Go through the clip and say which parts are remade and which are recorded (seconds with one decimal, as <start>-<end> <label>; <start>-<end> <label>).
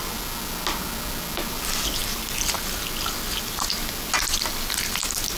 0.0-5.4 recorded